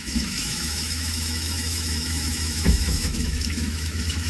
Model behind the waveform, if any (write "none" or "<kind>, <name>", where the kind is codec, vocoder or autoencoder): autoencoder, DAC-VAE